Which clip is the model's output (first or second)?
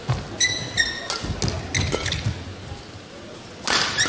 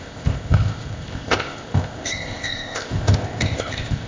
second